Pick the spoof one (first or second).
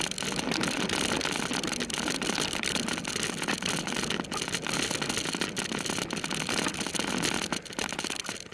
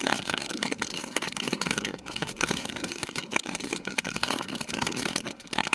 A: second